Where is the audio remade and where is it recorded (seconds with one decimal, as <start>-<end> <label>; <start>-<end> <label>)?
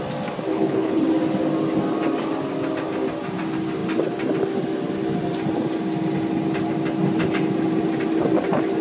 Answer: 0.0-0.5 recorded; 0.5-1.1 remade; 1.1-8.8 recorded